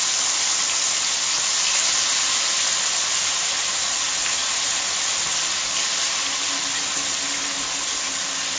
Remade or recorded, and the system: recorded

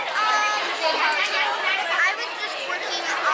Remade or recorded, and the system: recorded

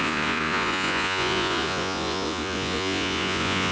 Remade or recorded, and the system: remade, vocoder, Vocos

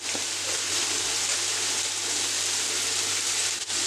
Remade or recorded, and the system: recorded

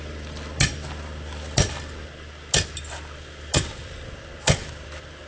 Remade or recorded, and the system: recorded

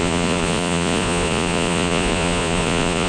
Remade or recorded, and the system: remade, vocoder, Vocos